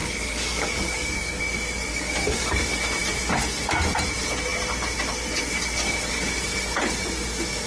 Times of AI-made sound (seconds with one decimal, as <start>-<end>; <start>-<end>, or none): 0.0-1.4; 1.9-2.6